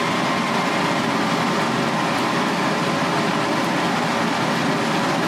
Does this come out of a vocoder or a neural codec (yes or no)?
no